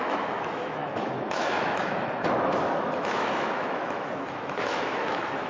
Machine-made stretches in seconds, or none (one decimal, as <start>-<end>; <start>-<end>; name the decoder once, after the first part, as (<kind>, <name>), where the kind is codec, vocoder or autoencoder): 0.0-5.5 (autoencoder, DAC-VAE)